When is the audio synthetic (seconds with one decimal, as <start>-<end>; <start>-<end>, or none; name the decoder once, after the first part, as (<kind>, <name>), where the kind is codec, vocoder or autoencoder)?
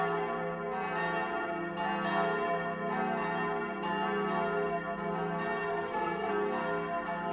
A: 5.7-6.3 (codec, SNAC)